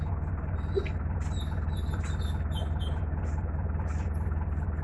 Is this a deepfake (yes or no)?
no